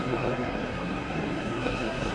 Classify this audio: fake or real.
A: fake